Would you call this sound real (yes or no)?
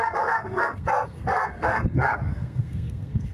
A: no